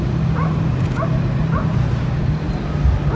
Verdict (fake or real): real